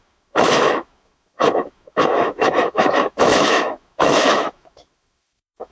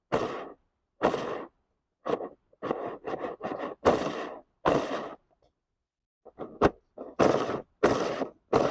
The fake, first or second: first